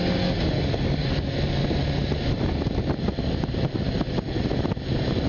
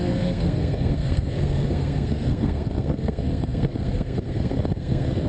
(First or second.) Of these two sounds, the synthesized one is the second